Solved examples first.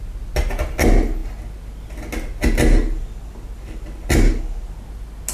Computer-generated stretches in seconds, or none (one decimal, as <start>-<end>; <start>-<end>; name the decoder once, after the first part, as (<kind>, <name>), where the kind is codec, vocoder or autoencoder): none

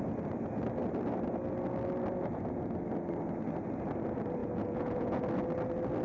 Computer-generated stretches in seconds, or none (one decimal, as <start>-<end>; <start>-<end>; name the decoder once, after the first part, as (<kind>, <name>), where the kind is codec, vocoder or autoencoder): 4.4-5.2 (vocoder, Vocos)

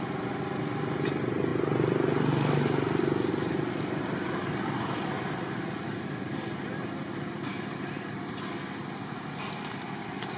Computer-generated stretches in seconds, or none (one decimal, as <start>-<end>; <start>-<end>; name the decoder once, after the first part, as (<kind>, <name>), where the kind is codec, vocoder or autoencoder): none